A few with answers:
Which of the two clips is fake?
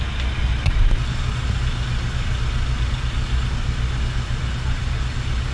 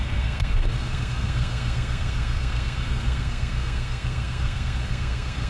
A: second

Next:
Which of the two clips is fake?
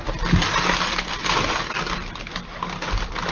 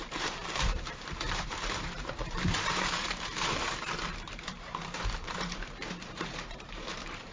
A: second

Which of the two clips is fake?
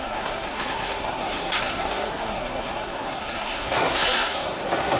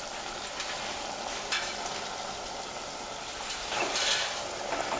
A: first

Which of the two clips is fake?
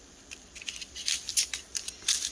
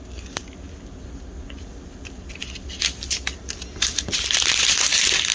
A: first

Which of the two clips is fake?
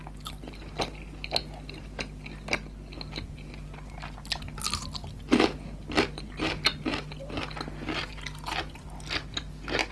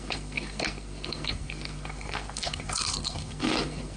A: second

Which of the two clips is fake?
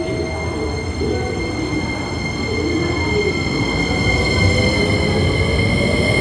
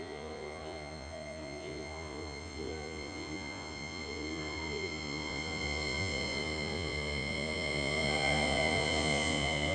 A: second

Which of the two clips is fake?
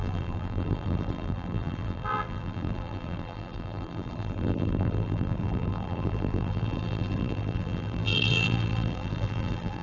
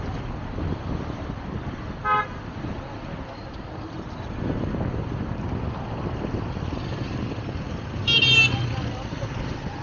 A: first